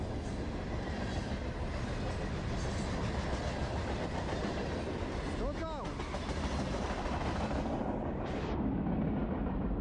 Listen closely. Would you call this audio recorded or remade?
recorded